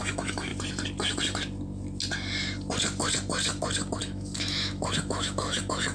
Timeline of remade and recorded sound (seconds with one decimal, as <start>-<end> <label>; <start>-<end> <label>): 0.0-0.5 remade; 0.5-4.0 recorded; 4.0-5.9 remade